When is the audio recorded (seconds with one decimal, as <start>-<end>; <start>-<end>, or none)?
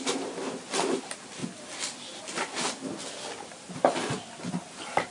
0.0-5.1